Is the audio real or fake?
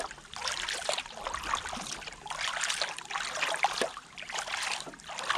real